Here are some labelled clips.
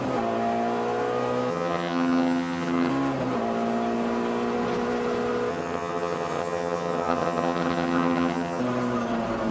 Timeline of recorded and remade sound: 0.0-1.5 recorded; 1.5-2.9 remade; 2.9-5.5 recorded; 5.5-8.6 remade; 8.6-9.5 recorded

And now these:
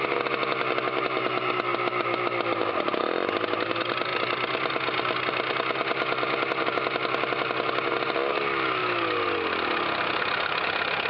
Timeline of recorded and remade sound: 0.0-1.7 recorded; 1.7-2.7 remade; 2.7-11.1 recorded

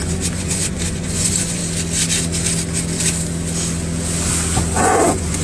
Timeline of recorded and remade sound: 0.0-1.6 remade; 1.6-4.8 recorded; 4.8-5.4 remade

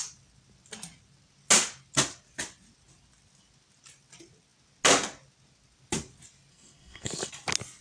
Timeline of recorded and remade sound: 0.0-6.5 recorded; 6.5-7.3 remade; 7.3-7.8 recorded

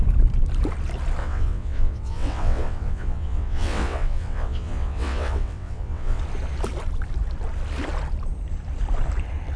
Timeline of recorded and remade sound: 0.0-1.2 recorded; 1.2-6.2 remade; 6.2-9.6 recorded